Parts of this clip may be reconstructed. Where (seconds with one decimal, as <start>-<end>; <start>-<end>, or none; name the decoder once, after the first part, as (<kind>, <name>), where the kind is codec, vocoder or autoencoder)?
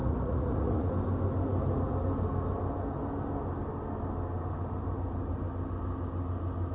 0.0-0.9 (vocoder, Vocos)